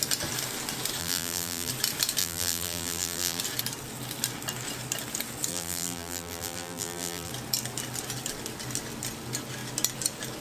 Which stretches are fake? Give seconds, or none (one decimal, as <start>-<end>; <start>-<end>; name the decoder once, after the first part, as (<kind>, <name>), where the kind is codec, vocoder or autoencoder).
1.0-1.7 (vocoder, BigVGAN v2); 2.2-3.4; 5.5-7.3